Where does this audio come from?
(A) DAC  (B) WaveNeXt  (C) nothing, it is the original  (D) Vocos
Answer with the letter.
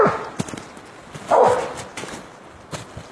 C